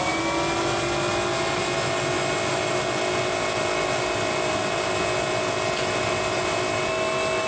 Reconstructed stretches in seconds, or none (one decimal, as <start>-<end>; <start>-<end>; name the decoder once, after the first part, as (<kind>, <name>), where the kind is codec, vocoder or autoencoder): none